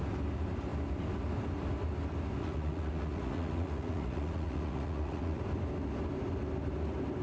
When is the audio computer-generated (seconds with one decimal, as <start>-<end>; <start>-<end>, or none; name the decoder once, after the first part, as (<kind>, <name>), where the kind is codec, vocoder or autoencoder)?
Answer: 2.4-5.4 (vocoder, Vocos)